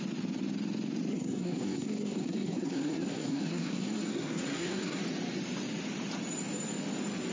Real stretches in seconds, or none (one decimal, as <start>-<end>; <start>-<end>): 0.0-1.1; 5.0-7.3